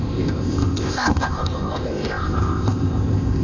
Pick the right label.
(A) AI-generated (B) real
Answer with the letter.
A